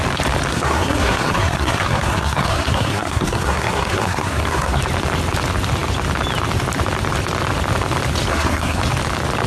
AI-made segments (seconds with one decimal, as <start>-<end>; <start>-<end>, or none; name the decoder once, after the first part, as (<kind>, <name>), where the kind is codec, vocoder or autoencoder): 0.5-4.8 (codec, SNAC); 8.3-8.8